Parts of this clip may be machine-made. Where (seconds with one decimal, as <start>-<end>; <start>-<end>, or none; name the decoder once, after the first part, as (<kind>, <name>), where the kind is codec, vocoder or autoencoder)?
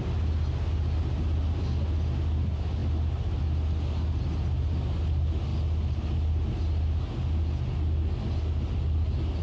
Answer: none